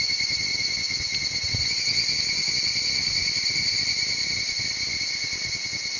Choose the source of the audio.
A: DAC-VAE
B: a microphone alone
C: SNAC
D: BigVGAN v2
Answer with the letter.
B